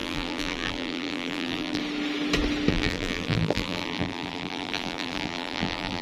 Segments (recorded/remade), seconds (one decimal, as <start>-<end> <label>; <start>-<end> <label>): 0.0-1.8 remade; 1.8-2.7 recorded; 2.7-6.0 remade